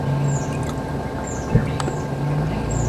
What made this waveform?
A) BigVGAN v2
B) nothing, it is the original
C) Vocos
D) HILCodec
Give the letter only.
B